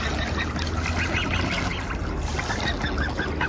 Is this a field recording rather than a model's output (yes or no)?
yes